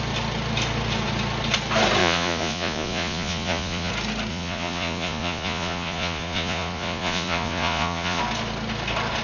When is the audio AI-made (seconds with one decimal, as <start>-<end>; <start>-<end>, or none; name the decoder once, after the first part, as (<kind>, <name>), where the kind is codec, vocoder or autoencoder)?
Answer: 2.0-3.9 (vocoder, Vocos); 4.3-8.2